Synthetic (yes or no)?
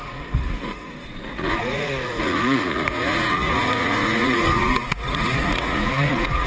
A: yes